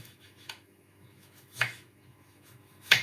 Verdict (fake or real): fake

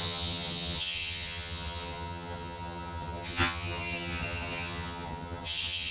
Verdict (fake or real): fake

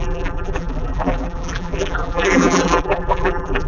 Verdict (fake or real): fake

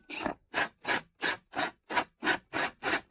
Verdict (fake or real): real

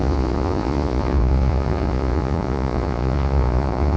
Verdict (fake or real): fake